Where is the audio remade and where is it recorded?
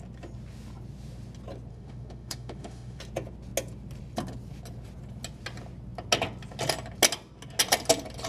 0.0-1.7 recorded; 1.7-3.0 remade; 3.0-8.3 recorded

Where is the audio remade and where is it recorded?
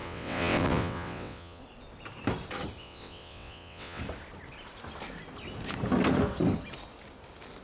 0.0-1.6 remade; 1.6-2.8 recorded; 2.8-4.0 remade; 4.0-7.6 recorded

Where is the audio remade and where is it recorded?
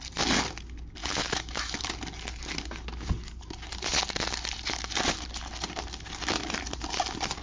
0.0-1.0 recorded; 1.0-1.9 remade; 1.9-7.4 recorded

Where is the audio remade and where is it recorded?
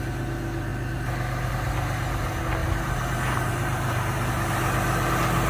0.0-2.6 recorded; 2.6-4.3 remade; 4.3-5.5 recorded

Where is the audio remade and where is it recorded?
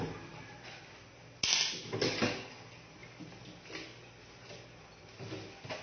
0.0-5.8 recorded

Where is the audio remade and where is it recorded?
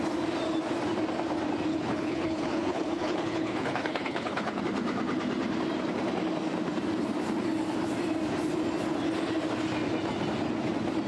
0.0-1.7 recorded; 1.7-4.6 remade; 4.6-11.1 recorded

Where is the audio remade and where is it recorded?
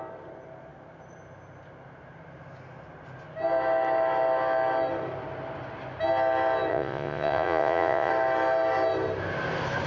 0.0-6.7 recorded; 6.7-8.1 remade; 8.1-9.9 recorded